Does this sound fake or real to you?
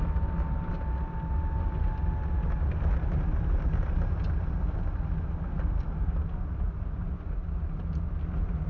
real